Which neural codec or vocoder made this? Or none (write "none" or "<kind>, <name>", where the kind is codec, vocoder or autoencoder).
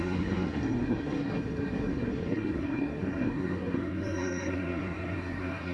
codec, SNAC